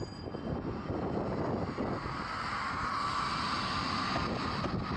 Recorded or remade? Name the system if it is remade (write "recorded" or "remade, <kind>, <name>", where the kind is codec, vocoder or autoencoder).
recorded